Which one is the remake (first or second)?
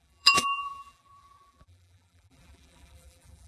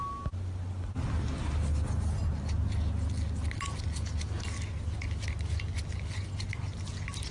first